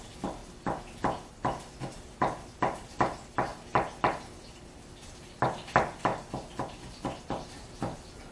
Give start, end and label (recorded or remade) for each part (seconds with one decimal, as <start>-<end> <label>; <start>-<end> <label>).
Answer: 0.0-0.4 remade; 0.4-1.8 recorded; 1.8-3.5 remade; 3.5-4.4 recorded; 4.4-6.1 remade; 6.1-6.9 recorded; 6.9-8.3 remade